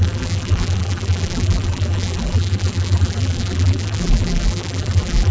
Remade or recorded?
remade